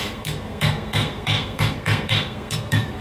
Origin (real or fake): fake